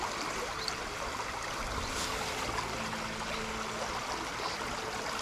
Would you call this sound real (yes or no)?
yes